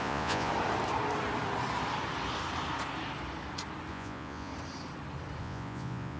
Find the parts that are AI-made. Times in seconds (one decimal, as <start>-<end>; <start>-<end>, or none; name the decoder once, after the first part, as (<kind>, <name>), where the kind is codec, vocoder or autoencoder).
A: 0.0-0.5 (vocoder, Vocos); 3.9-4.5; 5.4-6.2